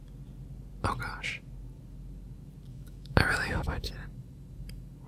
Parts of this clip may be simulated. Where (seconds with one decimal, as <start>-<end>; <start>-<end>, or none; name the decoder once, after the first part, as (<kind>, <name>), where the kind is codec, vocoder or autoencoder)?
2.7-3.9 (autoencoder, DAC-VAE)